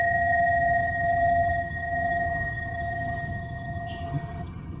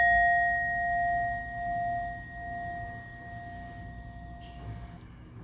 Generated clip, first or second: first